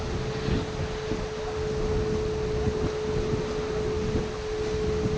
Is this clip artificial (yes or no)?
no